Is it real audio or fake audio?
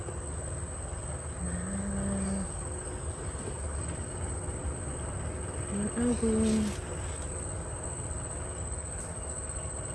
real